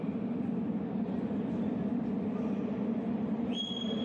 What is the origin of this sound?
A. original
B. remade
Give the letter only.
B